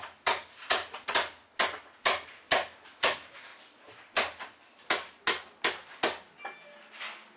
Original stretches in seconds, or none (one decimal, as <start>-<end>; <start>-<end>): 0.0-7.4